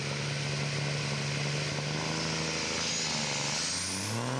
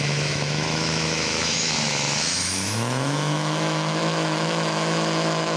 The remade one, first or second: second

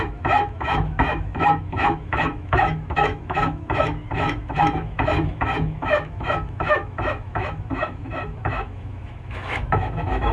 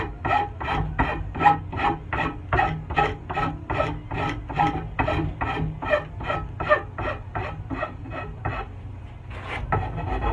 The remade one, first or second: first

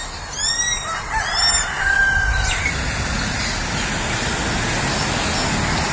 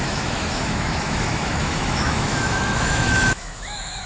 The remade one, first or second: second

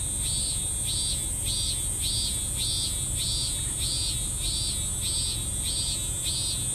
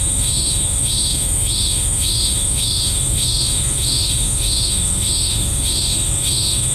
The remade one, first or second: second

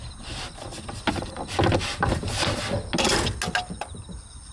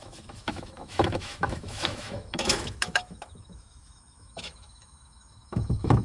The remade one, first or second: second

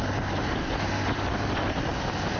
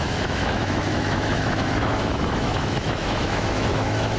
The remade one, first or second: second